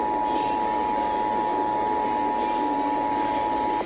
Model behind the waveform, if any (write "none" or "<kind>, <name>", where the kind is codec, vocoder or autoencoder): none